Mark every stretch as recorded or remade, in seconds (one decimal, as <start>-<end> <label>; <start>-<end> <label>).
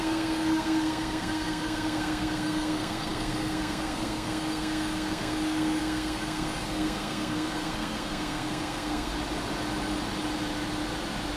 0.0-9.1 remade; 9.1-11.4 recorded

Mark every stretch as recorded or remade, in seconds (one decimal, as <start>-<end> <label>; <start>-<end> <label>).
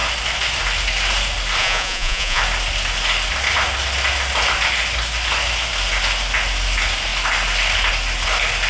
0.0-1.6 recorded; 1.6-2.4 remade; 2.4-8.7 recorded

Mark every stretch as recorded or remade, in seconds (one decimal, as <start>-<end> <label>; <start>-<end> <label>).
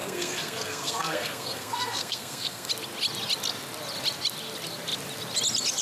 0.0-2.7 remade; 2.7-5.8 recorded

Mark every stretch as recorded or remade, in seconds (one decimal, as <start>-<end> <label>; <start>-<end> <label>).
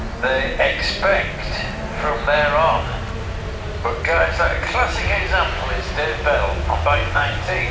0.0-7.0 recorded; 7.0-7.7 remade